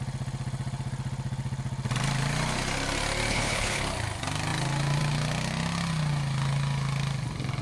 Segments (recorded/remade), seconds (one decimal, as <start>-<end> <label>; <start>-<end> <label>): 0.0-3.3 recorded; 3.3-3.8 remade; 3.8-7.6 recorded